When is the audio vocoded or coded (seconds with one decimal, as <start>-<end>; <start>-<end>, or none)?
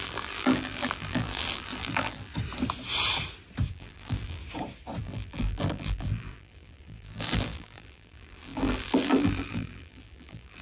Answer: 0.0-2.3; 3.7-4.4; 5.0-10.6